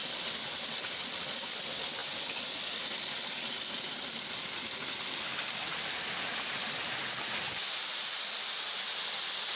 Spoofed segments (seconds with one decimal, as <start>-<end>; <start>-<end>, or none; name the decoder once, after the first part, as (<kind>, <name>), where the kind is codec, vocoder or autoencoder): none